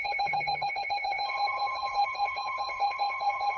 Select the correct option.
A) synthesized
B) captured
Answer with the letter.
A